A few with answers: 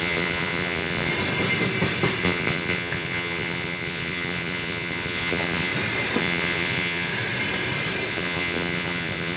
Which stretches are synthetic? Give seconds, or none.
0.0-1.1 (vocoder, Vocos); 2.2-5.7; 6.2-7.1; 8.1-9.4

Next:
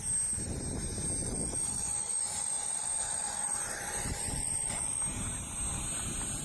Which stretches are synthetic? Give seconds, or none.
1.2-5.0 (vocoder, Vocos)

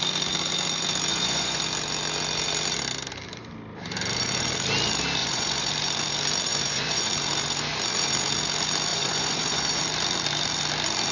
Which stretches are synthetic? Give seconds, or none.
1.1-1.6 (vocoder, Vocos); 5.2-5.7; 6.5-7.1; 8.9-9.8

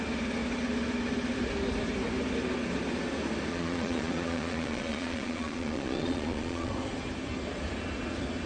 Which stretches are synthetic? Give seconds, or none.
3.5-6.7 (vocoder, Vocos)